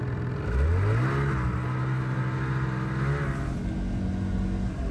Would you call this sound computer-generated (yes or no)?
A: no